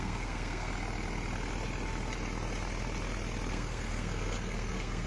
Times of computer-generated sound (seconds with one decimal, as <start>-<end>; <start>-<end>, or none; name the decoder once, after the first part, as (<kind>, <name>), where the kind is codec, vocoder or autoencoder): 0.0-0.7 (codec, SNAC); 3.5-5.1